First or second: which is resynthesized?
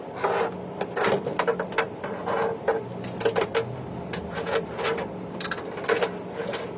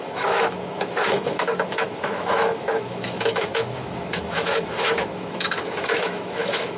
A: second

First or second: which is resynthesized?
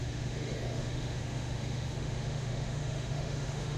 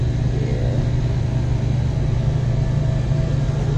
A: first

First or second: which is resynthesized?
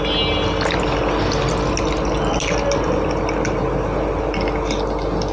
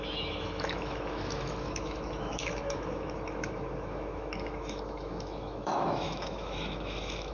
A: second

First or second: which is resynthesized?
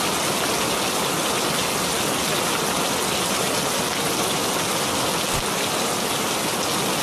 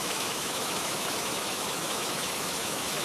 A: second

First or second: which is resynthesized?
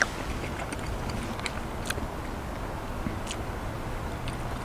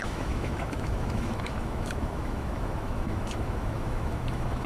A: second